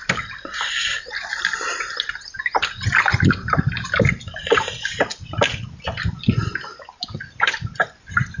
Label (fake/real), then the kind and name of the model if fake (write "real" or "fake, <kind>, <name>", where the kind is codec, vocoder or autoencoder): real